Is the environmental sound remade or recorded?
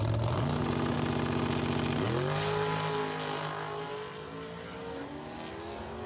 recorded